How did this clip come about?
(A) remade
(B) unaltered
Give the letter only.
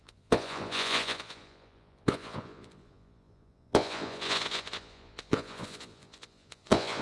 A